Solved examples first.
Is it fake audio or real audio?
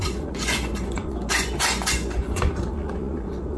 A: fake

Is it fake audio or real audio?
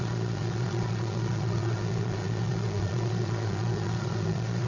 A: fake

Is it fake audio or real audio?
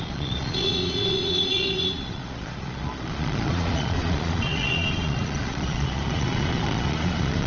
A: fake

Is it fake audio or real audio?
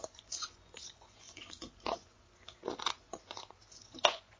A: fake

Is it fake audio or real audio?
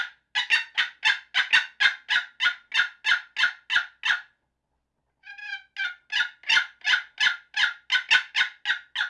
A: real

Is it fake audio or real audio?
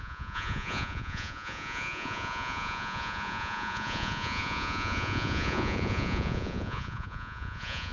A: fake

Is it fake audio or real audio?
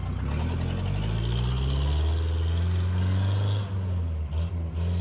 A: real